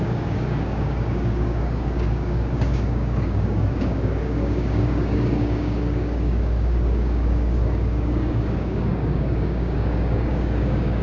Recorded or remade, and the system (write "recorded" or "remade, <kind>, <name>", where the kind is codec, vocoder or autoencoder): remade, codec, DAC